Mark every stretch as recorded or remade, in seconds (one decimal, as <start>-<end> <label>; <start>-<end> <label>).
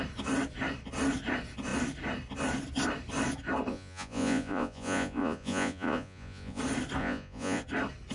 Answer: 0.0-3.7 recorded; 3.7-6.6 remade; 6.6-7.0 recorded; 7.0-7.6 remade; 7.6-8.1 recorded